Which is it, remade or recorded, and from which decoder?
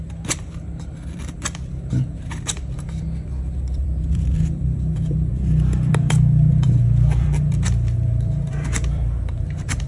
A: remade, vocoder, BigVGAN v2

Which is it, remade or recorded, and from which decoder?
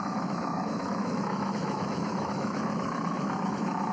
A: remade, autoencoder, DAC-VAE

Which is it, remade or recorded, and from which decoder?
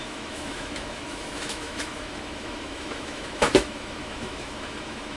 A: remade, autoencoder, DAC-VAE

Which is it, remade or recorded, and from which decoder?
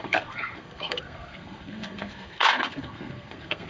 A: remade, codec, SNAC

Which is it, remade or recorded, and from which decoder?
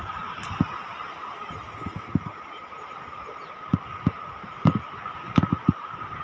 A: recorded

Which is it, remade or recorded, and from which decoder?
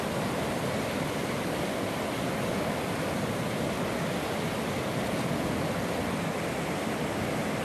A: recorded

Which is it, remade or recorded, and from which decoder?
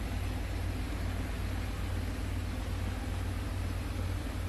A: recorded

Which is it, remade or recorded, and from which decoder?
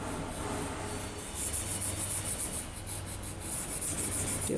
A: recorded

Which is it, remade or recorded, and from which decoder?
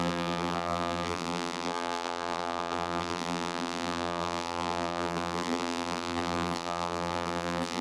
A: remade, vocoder, BigVGAN v2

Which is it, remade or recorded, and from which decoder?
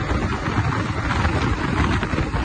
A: recorded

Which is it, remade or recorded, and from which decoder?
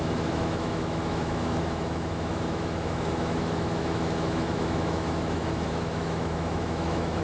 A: remade, autoencoder, DAC-VAE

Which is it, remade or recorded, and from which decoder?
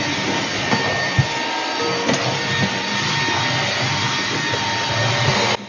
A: recorded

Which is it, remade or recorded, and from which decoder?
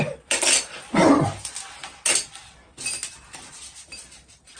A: recorded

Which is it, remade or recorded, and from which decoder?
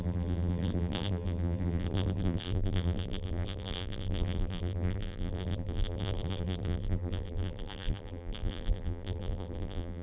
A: remade, vocoder, BigVGAN v2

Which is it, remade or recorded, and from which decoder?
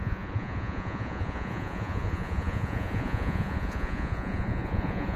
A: remade, vocoder, Vocos